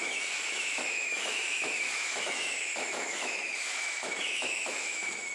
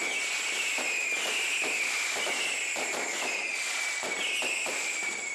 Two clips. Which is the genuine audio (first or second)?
second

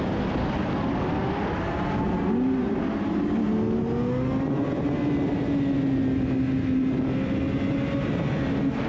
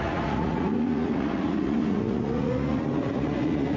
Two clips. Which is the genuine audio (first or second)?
first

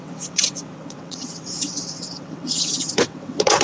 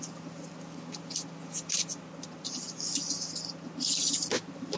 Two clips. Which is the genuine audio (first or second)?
second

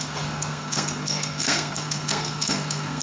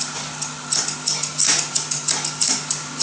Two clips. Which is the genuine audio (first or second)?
second